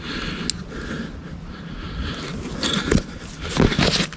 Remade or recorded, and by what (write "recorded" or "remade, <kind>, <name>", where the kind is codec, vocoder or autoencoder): recorded